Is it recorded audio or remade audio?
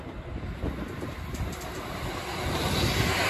recorded